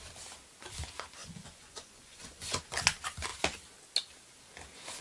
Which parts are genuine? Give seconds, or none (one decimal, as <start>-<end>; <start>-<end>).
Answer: 0.0-1.2; 2.6-5.0